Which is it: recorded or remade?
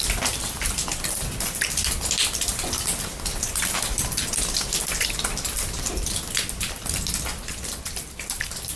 recorded